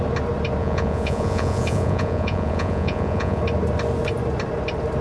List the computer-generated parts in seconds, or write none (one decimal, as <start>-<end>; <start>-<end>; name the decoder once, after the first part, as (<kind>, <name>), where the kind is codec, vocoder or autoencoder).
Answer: 0.6-3.4 (vocoder, Vocos)